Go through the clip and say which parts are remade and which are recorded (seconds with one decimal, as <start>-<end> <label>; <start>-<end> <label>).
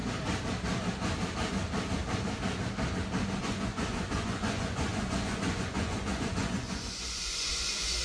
0.0-3.4 recorded; 3.4-8.0 remade